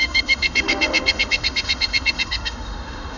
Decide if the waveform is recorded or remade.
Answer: remade